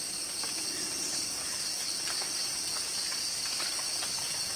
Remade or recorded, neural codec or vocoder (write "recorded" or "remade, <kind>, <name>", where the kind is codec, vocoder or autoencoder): recorded